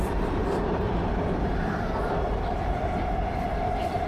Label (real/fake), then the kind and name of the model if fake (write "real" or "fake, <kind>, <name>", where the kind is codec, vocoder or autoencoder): fake, vocoder, BigVGAN v2